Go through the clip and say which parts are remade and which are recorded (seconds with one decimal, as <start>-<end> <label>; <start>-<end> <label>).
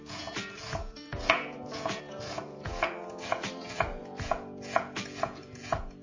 0.0-6.0 remade